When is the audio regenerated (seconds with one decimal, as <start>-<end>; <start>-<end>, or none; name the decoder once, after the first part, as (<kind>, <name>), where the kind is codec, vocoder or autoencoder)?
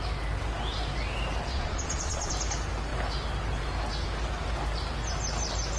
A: 1.5-2.3 (vocoder, Vocos)